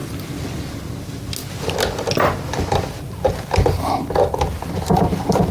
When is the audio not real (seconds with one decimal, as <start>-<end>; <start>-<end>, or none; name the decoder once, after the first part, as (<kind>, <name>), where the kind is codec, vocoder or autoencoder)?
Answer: none